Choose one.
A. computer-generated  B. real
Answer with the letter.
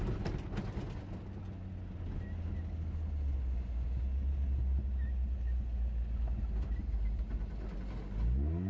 B